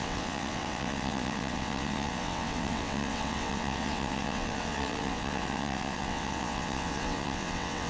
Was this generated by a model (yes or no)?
yes